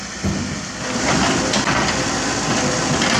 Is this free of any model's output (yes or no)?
yes